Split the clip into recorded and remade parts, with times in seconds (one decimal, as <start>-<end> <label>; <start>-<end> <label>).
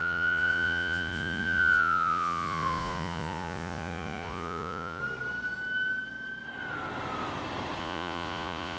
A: 0.0-5.0 remade; 5.0-7.8 recorded; 7.8-8.8 remade